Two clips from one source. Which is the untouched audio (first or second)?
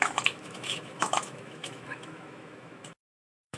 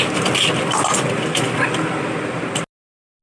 second